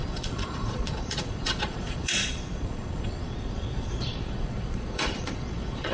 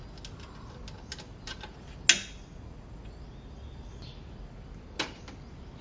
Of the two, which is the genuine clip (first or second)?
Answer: second